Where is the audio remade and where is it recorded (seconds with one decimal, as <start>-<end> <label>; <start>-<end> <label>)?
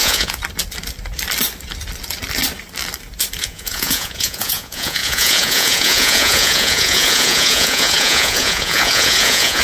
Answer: 0.0-0.4 remade; 0.4-3.4 recorded; 3.4-9.6 remade